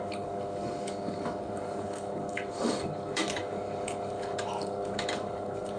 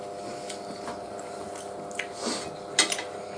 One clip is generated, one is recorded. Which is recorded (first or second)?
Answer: second